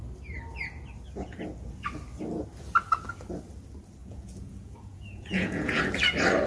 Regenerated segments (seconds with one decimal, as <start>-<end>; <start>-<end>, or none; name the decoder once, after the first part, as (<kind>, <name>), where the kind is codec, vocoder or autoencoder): 4.0-5.8 (vocoder, Vocos)